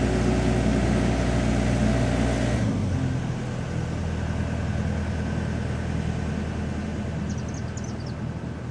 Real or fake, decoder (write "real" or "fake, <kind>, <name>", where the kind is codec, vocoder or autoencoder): real